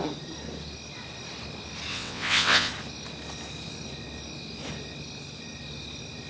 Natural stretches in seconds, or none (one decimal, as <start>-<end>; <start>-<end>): 0.0-1.9; 2.7-6.3